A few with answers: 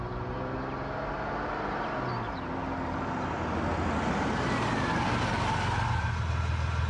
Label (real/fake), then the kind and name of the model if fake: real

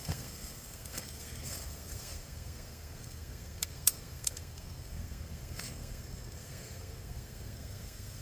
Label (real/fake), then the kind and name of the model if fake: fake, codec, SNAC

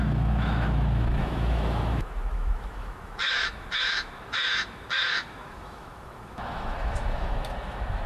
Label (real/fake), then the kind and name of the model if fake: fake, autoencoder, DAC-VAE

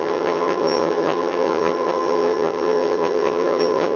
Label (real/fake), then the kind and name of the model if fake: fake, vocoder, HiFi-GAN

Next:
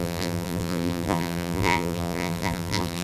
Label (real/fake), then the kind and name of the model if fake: fake, vocoder, BigVGAN v2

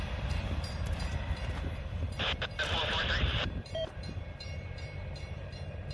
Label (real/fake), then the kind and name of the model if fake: fake, vocoder, BigVGAN v2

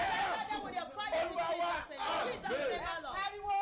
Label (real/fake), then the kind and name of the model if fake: real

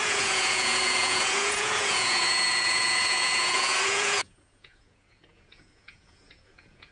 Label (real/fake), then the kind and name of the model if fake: fake, vocoder, Vocos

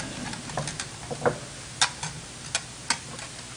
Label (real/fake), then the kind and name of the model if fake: real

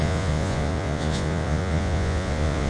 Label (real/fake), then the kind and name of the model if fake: fake, vocoder, Vocos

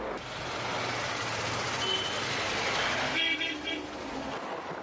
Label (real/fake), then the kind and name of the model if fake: real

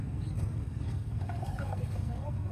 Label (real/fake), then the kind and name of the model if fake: fake, codec, SNAC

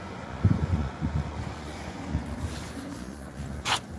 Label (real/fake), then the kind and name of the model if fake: fake, vocoder, Vocos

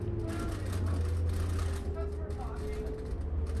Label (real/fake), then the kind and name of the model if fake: real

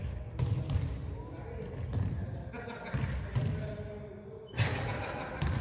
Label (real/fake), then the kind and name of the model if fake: real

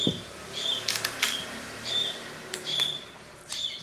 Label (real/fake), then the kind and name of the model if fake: fake, vocoder, BigVGAN v2